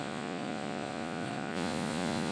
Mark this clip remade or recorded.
remade